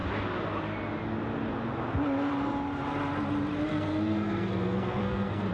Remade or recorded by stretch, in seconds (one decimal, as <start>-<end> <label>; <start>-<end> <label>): 0.0-3.7 recorded; 3.7-5.5 remade